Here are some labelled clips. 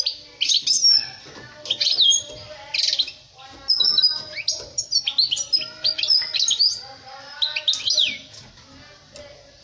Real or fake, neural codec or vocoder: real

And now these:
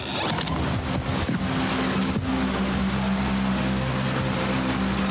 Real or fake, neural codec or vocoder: real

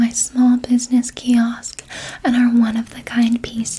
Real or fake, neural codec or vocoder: real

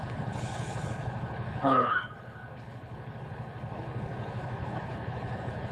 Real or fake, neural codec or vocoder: fake, codec, HILCodec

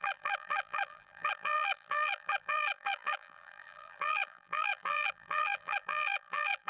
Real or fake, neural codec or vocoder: fake, vocoder, BigVGAN v2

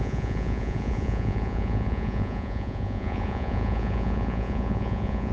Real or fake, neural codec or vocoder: fake, vocoder, Vocos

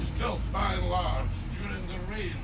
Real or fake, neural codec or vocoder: real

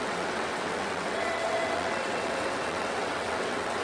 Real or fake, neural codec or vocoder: fake, vocoder, WaveNeXt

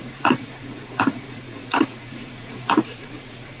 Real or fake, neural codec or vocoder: fake, vocoder, Vocos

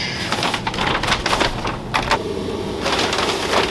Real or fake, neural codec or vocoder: real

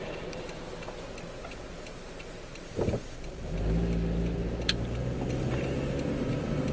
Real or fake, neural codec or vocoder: real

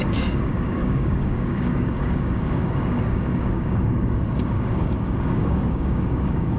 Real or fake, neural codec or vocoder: fake, codec, DAC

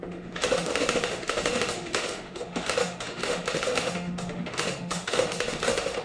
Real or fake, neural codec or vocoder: fake, autoencoder, DAC-VAE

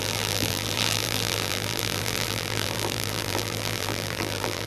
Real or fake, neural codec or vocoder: fake, vocoder, BigVGAN v2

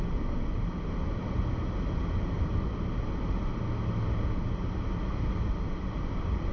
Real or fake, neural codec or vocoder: real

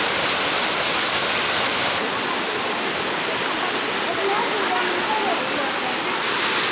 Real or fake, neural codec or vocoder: real